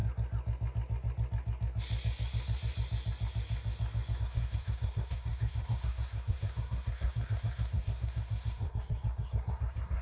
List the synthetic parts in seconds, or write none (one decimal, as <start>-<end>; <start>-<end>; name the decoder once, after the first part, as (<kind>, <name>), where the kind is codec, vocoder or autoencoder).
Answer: 4.2-10.0 (codec, SNAC)